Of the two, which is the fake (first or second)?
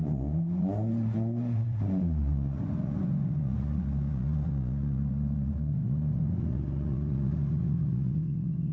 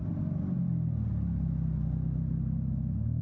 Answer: first